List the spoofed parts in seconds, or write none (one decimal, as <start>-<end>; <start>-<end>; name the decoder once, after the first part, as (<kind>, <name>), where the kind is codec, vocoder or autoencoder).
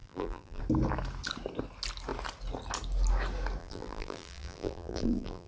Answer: 0.0-0.6 (vocoder, BigVGAN v2); 3.6-5.5